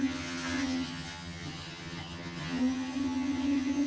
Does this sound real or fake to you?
fake